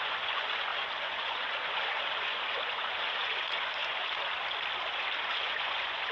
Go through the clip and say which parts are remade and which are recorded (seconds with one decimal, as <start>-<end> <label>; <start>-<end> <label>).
0.0-4.0 remade; 4.0-5.2 recorded; 5.2-6.1 remade